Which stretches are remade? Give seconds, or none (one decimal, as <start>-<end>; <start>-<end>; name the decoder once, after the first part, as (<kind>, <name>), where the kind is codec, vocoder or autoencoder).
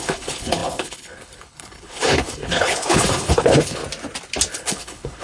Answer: 0.0-3.8 (codec, HILCodec); 4.5-5.2